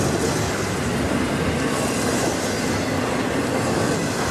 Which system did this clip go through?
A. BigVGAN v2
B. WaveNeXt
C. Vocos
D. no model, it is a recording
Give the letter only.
D